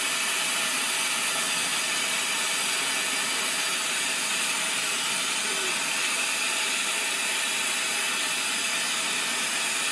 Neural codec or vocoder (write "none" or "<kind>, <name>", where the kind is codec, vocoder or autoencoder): none